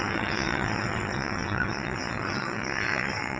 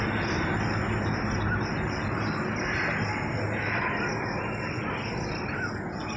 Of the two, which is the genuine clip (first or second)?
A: second